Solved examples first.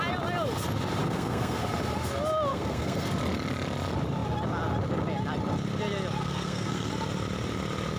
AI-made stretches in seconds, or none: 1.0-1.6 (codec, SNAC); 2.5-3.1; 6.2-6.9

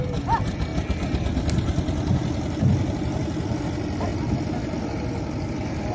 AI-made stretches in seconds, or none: none

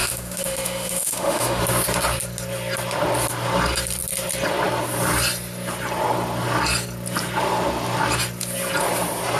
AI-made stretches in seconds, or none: 0.0-1.6 (autoencoder, DAC-VAE)

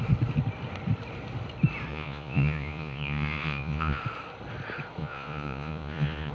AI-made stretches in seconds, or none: 1.9-4.0 (vocoder, Vocos); 5.0-6.3

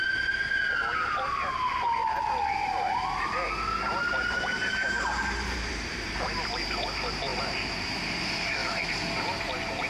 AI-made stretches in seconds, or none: 0.0-2.0 (vocoder, BigVGAN v2); 4.1-8.6

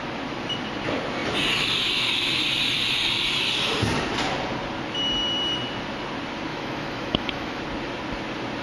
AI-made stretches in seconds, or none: 6.5-7.6 (autoencoder, DAC-VAE)